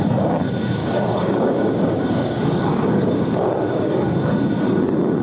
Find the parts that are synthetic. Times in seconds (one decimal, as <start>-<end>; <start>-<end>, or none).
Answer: 0.8-3.9